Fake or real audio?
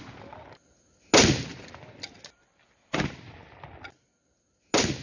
real